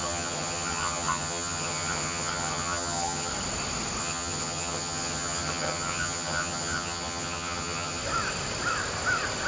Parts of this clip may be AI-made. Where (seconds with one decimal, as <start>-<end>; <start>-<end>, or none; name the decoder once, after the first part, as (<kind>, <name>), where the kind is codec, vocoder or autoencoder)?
0.0-3.3 (vocoder, HiFi-GAN); 4.0-8.0